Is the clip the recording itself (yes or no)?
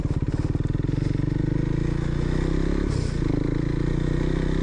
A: yes